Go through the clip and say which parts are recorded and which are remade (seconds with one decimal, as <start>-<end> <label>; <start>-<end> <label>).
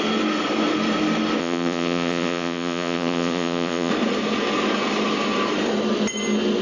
0.0-1.4 recorded; 1.4-3.9 remade; 3.9-6.6 recorded